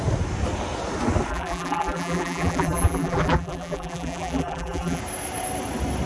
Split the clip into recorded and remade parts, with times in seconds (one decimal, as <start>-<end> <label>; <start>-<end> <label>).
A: 0.0-1.3 recorded; 1.3-5.0 remade; 5.0-6.1 recorded